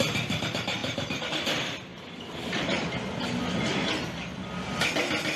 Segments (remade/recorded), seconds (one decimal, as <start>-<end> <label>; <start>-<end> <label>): 0.0-0.8 recorded; 0.8-1.3 remade; 1.3-5.4 recorded